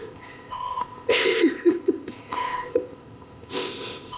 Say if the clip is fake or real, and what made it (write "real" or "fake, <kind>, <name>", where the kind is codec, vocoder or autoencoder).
fake, codec, ZipCodec